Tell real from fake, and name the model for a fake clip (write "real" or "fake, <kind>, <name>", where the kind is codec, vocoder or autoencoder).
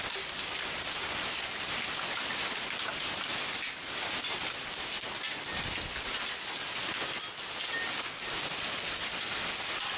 real